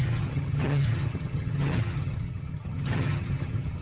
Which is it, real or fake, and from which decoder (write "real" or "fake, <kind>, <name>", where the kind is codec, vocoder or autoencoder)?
fake, vocoder, HiFi-GAN